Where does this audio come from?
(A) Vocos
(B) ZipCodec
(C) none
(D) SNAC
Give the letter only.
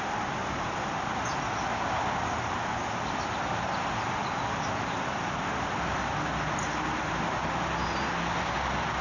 C